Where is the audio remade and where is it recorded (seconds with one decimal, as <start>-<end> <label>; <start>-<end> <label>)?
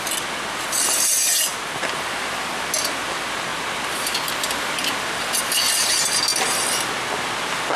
0.0-7.8 recorded